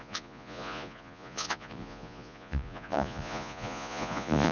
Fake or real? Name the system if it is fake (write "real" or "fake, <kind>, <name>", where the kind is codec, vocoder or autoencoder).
fake, vocoder, Vocos